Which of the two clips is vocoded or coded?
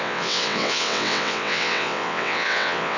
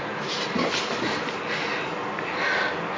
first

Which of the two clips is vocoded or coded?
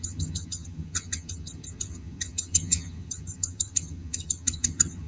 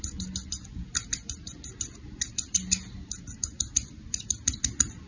first